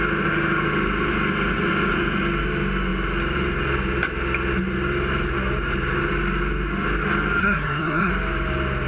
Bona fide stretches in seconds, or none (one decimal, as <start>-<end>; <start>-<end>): 0.0-7.4; 8.1-8.9